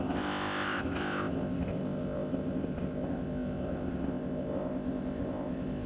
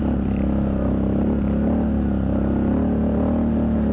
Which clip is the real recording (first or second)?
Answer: second